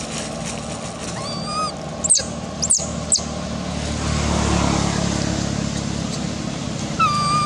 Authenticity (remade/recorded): recorded